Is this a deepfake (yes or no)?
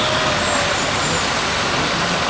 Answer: no